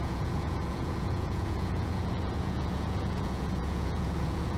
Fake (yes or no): yes